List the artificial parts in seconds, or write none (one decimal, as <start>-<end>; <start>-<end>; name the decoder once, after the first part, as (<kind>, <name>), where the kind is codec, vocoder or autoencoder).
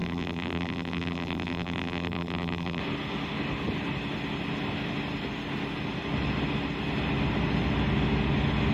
0.0-2.8 (vocoder, BigVGAN v2)